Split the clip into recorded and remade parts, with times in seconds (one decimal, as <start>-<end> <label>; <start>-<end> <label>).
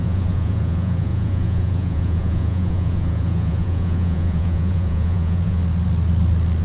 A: 0.0-5.6 remade; 5.6-6.6 recorded